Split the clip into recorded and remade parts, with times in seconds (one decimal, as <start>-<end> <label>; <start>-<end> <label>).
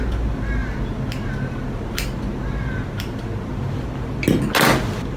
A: 0.0-5.2 recorded